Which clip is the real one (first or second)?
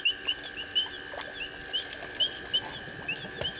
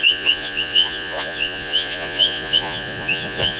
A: first